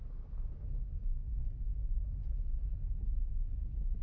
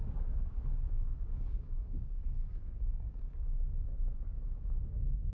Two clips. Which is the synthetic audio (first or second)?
second